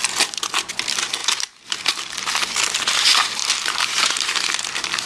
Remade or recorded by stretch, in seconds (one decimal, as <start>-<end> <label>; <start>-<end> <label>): 0.0-1.2 recorded; 1.2-1.9 remade; 1.9-3.4 recorded; 3.4-4.1 remade; 4.1-5.1 recorded